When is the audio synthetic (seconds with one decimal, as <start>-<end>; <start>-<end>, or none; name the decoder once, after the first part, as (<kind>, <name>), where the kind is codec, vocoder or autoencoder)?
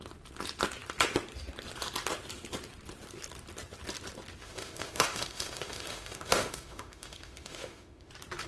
4.4-8.1 (autoencoder, DAC-VAE)